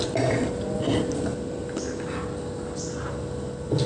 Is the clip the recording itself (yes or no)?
yes